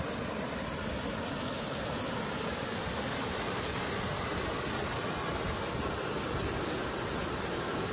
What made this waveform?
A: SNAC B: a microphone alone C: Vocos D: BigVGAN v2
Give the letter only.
B